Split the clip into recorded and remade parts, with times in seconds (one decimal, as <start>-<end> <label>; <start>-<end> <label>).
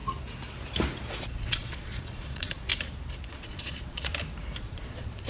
0.0-1.1 recorded; 1.1-2.7 remade; 2.7-3.3 recorded; 3.3-4.1 remade; 4.1-4.6 recorded; 4.6-5.3 remade